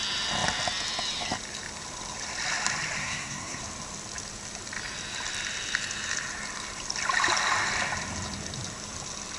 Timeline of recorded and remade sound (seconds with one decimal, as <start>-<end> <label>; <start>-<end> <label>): 0.0-3.0 recorded; 3.0-3.6 remade; 3.6-9.4 recorded